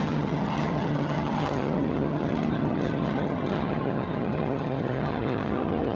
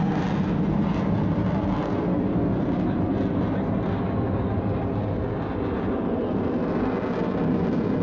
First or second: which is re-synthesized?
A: first